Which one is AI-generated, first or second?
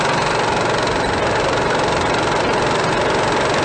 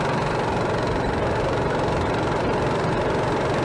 second